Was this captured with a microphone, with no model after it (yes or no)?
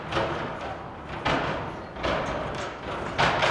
yes